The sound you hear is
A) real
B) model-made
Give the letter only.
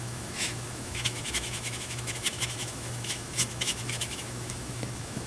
B